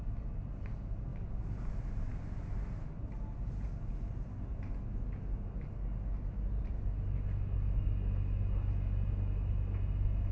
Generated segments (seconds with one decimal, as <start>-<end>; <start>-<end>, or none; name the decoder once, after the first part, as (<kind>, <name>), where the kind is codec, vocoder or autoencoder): none